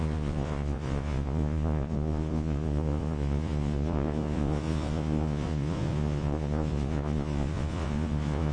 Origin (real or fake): fake